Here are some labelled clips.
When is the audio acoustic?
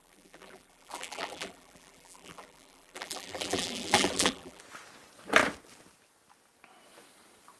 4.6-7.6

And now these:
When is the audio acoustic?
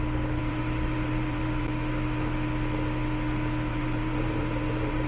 0.0-0.4; 1.6-3.7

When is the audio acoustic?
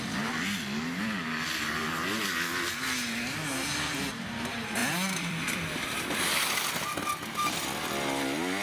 0.0-4.8; 6.7-8.6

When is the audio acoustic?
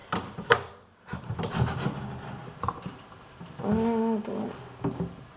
1.4-5.4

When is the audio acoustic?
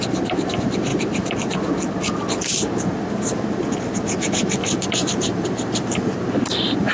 0.0-4.6; 6.4-6.9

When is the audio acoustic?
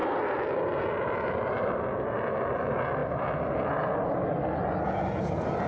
2.0-5.7